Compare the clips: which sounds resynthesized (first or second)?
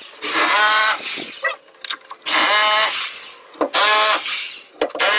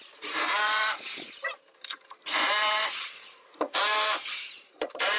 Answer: second